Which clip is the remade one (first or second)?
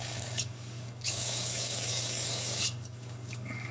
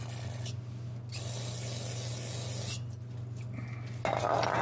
first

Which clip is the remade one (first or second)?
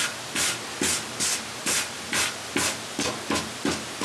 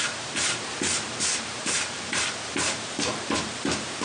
second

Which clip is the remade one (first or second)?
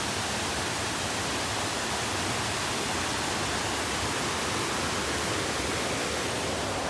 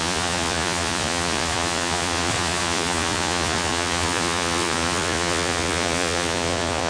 second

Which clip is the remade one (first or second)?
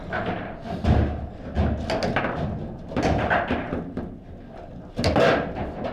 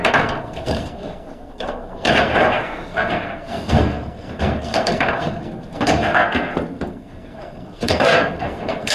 second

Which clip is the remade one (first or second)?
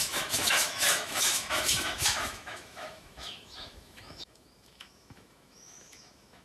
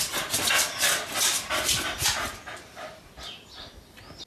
first